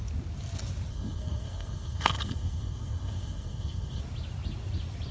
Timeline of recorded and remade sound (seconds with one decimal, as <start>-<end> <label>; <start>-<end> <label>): 0.0-0.9 recorded; 0.9-4.0 remade; 4.0-5.1 recorded